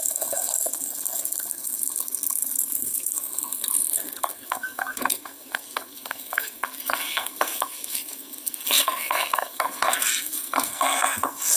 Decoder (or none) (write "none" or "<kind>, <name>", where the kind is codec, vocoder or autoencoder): codec, SNAC